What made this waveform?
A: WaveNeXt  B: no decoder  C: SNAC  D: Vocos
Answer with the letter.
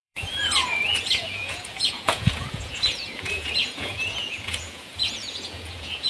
D